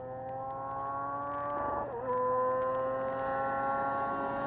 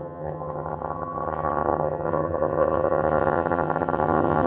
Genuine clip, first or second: first